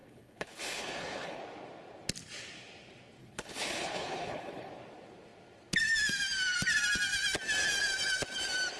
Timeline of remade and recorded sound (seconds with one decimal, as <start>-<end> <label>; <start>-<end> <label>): 0.0-1.4 remade; 1.4-3.2 recorded; 3.2-4.7 remade; 4.7-8.8 recorded